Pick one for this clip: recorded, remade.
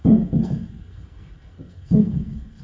remade